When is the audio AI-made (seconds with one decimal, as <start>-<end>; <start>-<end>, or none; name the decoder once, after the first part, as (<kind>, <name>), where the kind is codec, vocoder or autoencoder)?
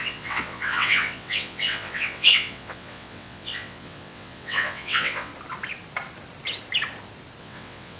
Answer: 0.0-5.3 (vocoder, WaveNeXt); 7.4-8.0